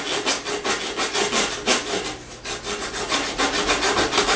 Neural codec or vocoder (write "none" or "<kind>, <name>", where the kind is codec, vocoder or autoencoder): none